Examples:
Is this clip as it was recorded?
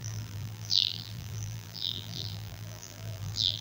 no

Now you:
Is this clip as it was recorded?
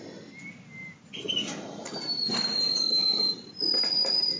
yes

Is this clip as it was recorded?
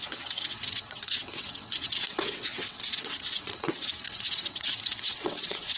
no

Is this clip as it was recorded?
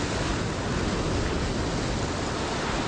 yes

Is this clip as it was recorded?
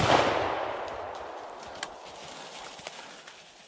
yes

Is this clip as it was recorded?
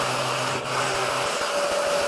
yes